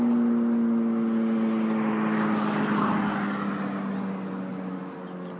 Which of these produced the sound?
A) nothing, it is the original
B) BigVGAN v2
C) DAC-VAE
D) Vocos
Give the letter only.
A